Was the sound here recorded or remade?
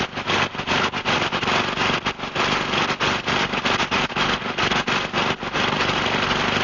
recorded